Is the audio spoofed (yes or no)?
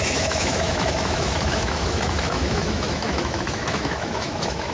yes